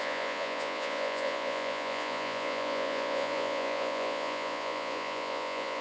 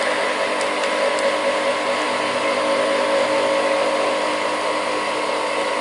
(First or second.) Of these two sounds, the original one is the second